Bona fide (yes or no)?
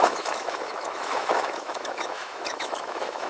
no